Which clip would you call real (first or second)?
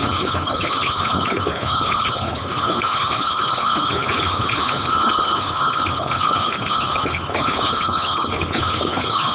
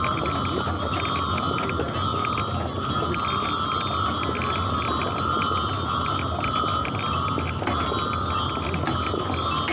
second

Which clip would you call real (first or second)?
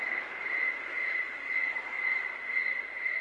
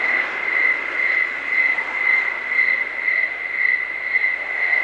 second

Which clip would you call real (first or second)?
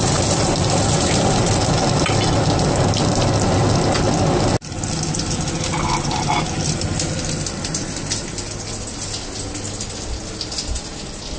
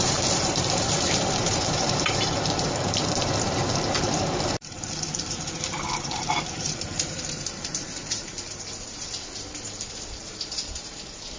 first